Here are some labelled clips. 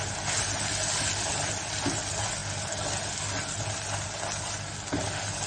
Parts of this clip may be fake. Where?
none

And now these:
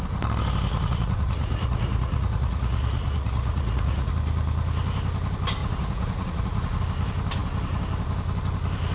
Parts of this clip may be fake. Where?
0.7-4.1 (vocoder, Vocos); 5.6-6.8

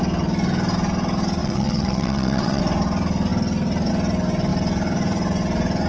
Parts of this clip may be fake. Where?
1.4-2.6 (vocoder, WaveNeXt)

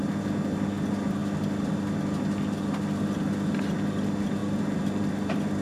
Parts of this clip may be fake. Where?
none

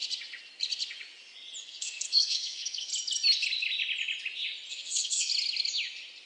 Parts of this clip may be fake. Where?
1.6-2.9 (codec, SNAC); 4.7-5.3

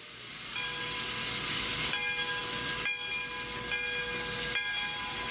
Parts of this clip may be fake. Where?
none

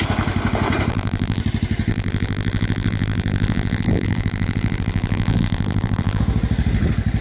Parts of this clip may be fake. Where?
0.9-1.4 (vocoder, BigVGAN v2); 1.9-6.2